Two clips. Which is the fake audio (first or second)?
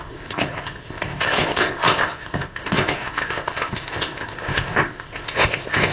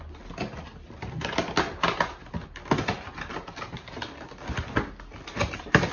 first